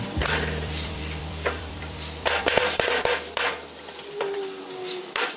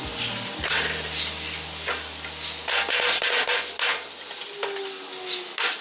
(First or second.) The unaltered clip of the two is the second